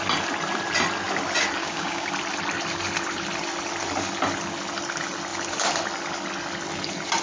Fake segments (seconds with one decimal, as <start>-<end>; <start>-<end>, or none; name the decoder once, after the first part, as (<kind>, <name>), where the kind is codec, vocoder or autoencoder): 1.6-2.1 (codec, DAC)